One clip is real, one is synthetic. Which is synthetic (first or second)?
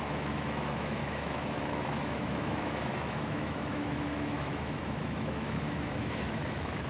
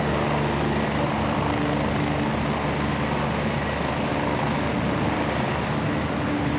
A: first